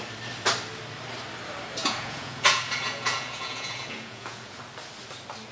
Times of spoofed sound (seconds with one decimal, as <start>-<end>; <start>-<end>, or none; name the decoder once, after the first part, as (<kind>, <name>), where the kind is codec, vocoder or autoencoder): 1.8-4.6 (vocoder, Vocos)